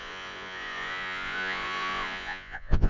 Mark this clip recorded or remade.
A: remade